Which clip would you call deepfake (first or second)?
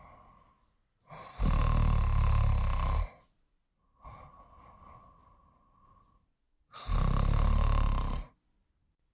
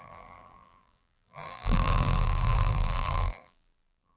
second